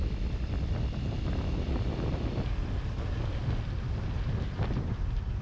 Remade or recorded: recorded